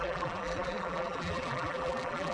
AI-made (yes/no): yes